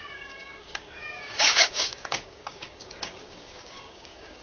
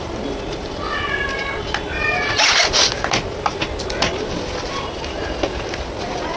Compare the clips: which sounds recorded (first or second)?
second